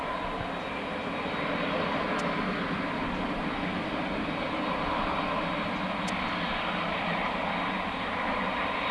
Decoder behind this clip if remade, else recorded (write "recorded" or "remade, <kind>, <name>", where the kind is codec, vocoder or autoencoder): recorded